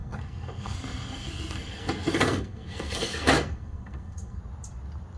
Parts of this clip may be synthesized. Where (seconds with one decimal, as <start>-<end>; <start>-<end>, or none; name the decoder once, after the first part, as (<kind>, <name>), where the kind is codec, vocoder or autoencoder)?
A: 0.0-4.4 (codec, SNAC)